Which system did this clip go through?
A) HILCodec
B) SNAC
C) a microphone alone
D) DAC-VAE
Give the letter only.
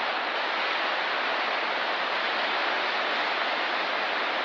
C